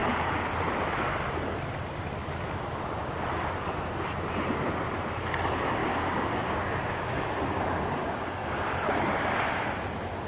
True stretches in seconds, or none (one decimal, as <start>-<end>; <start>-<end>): 0.0-5.8; 8.9-10.3